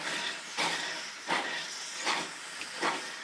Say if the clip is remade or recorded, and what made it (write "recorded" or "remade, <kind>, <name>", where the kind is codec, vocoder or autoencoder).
recorded